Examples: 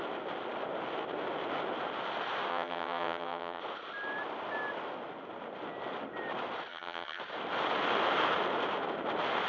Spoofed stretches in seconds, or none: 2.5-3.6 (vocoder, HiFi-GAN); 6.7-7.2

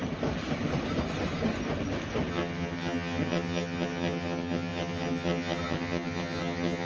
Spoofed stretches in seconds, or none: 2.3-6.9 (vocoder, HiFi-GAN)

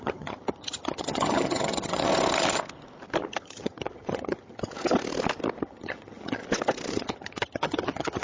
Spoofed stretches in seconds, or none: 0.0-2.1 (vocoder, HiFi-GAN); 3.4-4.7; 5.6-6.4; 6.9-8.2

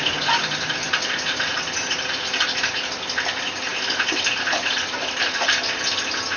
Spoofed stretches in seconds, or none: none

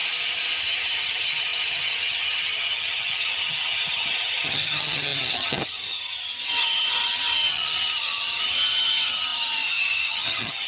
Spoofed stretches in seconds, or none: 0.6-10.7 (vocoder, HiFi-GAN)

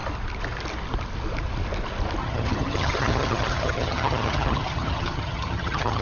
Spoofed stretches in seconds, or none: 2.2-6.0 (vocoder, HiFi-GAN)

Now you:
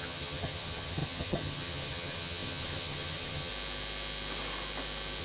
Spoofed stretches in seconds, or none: 0.0-3.5 (vocoder, HiFi-GAN)